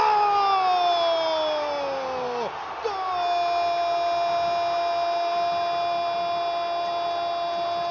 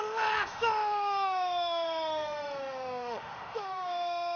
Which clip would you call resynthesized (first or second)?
second